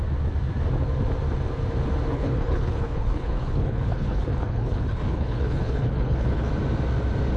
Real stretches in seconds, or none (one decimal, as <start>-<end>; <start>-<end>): 0.0-2.1; 6.5-7.4